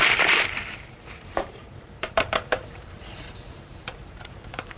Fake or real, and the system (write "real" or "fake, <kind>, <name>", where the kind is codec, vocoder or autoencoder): fake, vocoder, BigVGAN v2